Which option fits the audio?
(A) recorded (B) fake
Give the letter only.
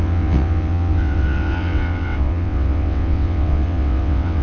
B